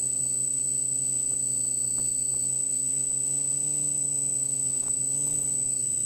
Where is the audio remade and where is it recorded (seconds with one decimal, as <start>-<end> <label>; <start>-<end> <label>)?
0.0-4.4 recorded; 4.4-5.0 remade; 5.0-6.1 recorded